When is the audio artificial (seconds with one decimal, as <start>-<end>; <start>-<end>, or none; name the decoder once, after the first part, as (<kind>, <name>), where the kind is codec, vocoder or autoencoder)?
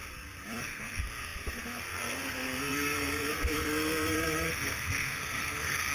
0.6-5.9 (codec, SNAC)